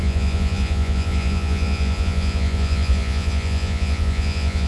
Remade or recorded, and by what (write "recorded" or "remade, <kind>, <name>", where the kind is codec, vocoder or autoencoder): remade, vocoder, Vocos